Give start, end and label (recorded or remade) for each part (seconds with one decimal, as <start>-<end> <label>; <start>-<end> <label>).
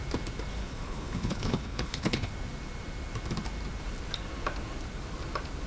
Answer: 0.0-0.6 recorded; 0.6-2.3 remade; 2.3-5.7 recorded